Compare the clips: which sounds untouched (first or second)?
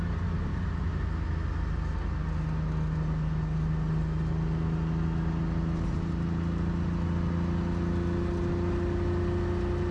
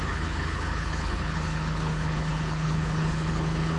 first